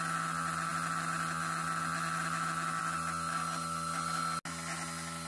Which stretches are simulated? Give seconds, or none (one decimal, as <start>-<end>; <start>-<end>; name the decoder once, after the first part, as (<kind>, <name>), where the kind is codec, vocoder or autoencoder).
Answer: none